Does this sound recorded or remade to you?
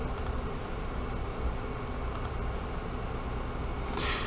recorded